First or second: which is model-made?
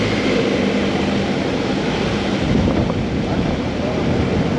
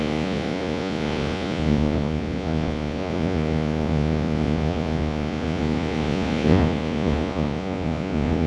second